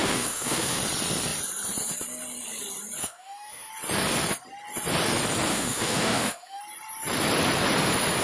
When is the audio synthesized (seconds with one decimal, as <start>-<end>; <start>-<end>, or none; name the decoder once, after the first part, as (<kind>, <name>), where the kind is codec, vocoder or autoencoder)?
0.0-0.8 (autoencoder, DAC-VAE); 3.0-3.7; 5.5-6.6